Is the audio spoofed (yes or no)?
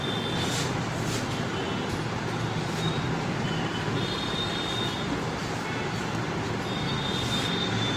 no